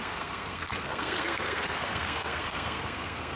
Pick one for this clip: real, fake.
fake